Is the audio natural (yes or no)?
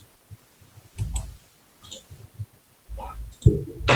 yes